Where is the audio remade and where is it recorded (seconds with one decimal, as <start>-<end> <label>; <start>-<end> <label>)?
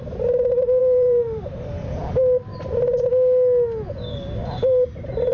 0.0-0.8 recorded; 0.8-1.9 remade; 1.9-2.5 recorded; 2.5-3.0 remade; 3.0-4.4 recorded; 4.4-5.3 remade